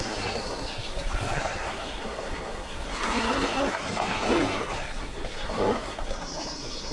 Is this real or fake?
fake